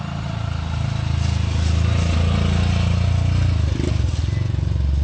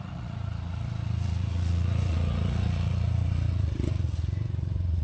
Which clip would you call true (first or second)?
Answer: first